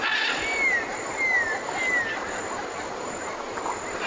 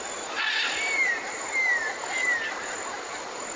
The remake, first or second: second